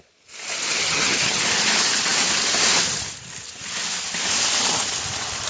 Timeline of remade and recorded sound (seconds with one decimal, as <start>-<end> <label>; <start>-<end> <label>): 0.0-0.8 recorded; 0.8-1.4 remade; 1.4-5.5 recorded